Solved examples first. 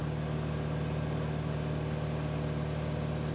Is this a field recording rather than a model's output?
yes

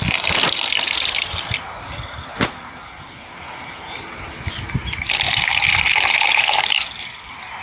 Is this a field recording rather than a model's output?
yes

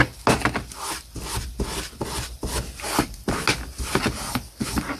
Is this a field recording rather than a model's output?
yes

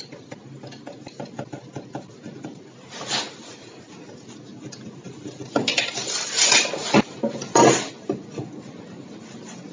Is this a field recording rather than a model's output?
yes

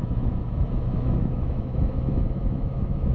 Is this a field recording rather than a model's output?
no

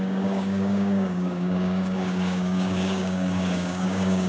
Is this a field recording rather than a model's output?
no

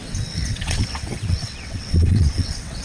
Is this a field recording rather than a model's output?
no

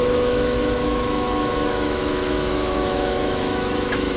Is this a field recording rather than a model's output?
no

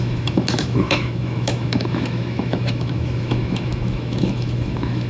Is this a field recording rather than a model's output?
no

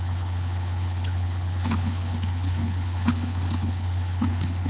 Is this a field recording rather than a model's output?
no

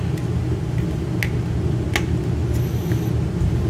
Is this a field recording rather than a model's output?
yes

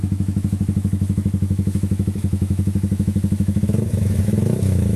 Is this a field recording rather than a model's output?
no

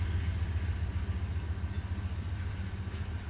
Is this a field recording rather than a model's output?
yes